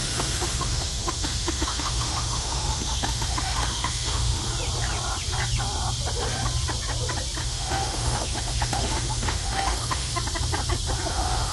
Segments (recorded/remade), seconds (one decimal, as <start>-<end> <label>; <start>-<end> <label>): 0.0-4.4 remade; 4.4-7.4 recorded; 7.4-10.1 remade; 10.1-11.1 recorded; 11.1-11.5 remade